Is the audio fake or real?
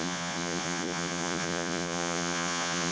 fake